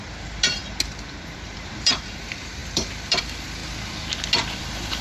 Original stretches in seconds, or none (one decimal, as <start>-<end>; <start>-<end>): 0.6-1.3; 3.6-4.2